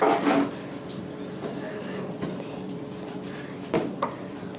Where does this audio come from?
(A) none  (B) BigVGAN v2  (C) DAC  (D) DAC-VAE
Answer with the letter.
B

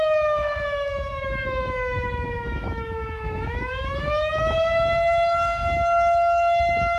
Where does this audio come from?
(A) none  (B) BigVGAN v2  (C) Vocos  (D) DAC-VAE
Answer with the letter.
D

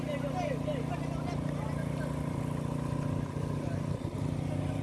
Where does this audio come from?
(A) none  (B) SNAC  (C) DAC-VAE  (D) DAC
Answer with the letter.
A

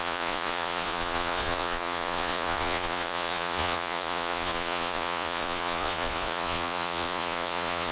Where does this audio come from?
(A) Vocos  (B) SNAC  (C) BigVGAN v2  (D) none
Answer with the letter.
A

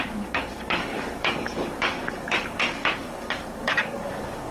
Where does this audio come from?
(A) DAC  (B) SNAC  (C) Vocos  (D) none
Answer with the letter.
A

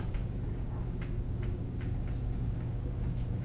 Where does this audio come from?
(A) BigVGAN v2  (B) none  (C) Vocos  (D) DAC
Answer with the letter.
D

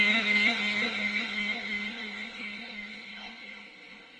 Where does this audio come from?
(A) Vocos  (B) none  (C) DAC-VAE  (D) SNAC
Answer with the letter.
D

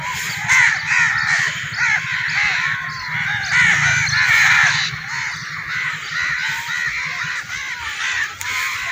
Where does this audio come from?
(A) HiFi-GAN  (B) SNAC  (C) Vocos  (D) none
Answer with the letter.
D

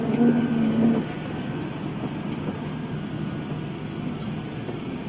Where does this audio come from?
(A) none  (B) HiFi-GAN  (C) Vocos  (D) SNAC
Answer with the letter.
A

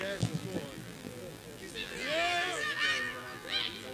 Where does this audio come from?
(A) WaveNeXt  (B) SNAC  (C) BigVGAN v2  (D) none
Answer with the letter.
C